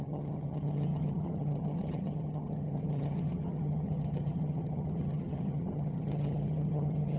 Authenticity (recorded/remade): remade